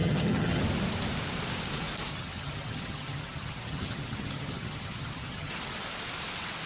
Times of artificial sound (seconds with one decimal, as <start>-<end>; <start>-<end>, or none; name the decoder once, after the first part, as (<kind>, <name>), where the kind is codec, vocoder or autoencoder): 0.0-0.6 (vocoder, HiFi-GAN); 2.1-5.5